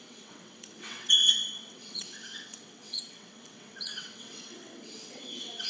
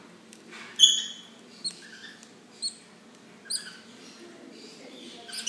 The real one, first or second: second